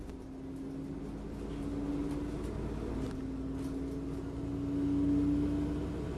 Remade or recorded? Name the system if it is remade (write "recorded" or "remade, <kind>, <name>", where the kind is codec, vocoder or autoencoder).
recorded